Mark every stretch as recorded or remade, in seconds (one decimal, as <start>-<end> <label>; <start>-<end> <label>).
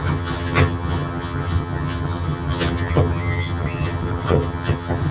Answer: 0.0-5.1 remade